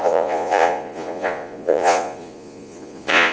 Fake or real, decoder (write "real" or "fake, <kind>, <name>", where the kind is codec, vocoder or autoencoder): fake, vocoder, Vocos